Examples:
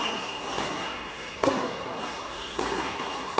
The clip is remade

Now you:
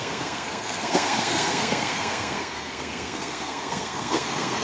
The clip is remade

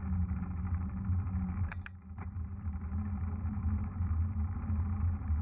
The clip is remade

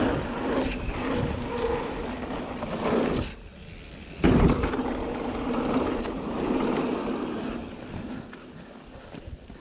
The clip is recorded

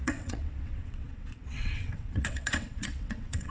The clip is remade